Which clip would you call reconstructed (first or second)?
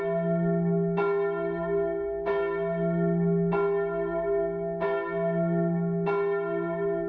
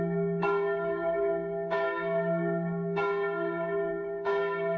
second